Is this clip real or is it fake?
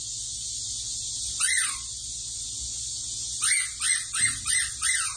real